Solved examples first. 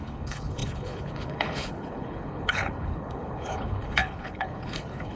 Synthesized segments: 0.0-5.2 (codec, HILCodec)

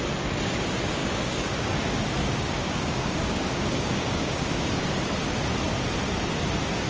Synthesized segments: 1.0-4.7 (codec, DAC)

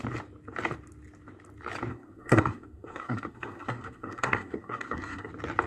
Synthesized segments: 1.9-5.3 (codec, SNAC)

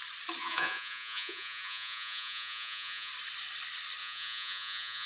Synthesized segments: 0.4-3.1 (vocoder, Vocos); 4.0-5.1